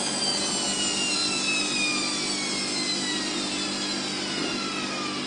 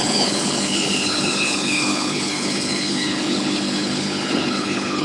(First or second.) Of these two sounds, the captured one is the first